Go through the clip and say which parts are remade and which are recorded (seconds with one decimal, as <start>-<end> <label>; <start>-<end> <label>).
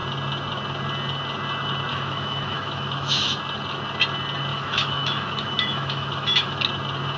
0.0-1.9 recorded; 1.9-3.4 remade; 3.4-4.5 recorded; 4.5-6.6 remade; 6.6-7.2 recorded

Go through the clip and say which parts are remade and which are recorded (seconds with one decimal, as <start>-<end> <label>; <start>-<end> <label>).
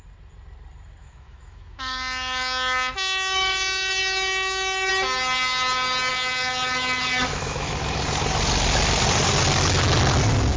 0.0-1.0 recorded; 1.0-4.9 remade; 4.9-6.1 recorded; 6.1-7.7 remade; 7.7-10.6 recorded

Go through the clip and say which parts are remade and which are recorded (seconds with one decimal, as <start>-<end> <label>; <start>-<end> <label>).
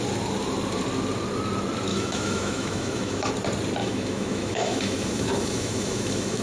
0.0-1.9 recorded; 1.9-3.3 remade; 3.3-3.8 recorded; 3.8-6.4 remade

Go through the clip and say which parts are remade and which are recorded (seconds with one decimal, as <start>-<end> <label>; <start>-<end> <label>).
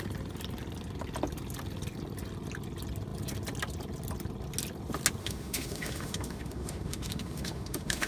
0.0-5.2 recorded; 5.2-8.1 remade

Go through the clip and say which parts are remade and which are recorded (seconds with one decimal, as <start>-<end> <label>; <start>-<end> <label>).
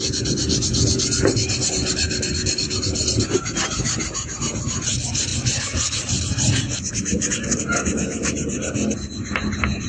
0.0-9.9 recorded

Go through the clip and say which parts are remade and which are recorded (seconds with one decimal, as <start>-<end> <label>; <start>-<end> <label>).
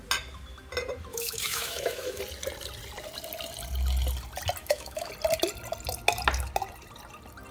0.0-1.1 recorded; 1.1-2.2 remade; 2.2-4.6 recorded; 4.6-5.1 remade; 5.1-7.5 recorded